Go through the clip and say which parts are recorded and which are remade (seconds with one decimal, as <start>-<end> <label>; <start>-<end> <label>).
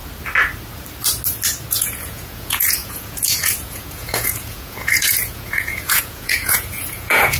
0.0-1.7 recorded; 1.7-7.4 remade